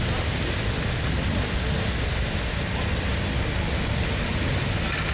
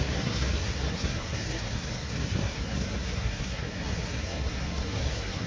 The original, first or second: first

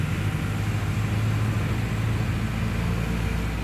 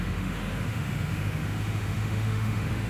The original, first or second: first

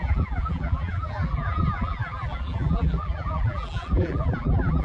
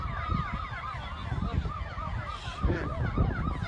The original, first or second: second